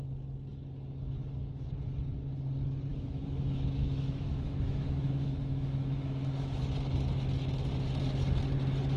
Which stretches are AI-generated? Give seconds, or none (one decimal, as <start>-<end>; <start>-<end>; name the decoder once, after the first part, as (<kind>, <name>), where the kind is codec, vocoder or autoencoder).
2.9-6.6 (autoencoder, DAC-VAE)